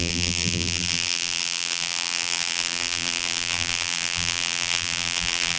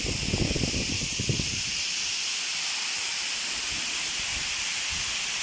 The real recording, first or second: second